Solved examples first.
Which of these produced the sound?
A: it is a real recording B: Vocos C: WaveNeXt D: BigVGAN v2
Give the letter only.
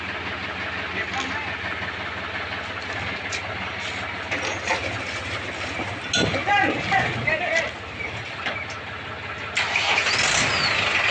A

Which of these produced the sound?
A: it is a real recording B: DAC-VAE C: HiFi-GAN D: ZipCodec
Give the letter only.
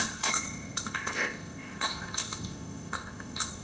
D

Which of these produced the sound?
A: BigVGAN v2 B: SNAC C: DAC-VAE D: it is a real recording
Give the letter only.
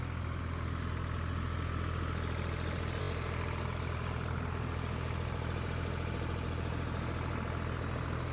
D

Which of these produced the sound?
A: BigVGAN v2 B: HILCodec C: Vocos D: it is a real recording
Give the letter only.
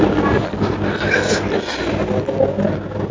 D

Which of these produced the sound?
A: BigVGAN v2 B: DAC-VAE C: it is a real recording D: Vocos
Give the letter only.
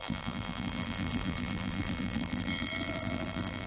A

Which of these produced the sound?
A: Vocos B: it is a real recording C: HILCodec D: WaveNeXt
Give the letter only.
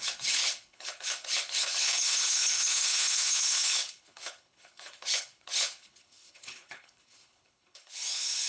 C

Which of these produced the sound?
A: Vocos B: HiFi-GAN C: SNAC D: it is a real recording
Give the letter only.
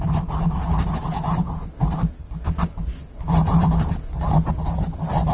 D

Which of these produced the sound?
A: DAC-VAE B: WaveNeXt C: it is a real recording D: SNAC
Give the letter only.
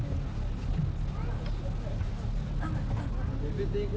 C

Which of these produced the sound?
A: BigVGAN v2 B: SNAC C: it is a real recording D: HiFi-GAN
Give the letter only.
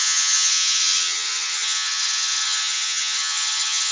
D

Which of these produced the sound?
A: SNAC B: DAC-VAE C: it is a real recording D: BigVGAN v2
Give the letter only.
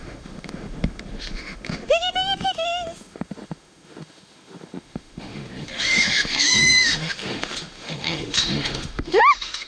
B